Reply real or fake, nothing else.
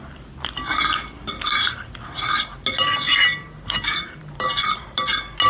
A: real